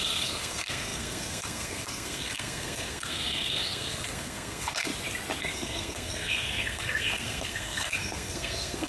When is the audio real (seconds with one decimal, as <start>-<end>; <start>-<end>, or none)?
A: 4.9-5.4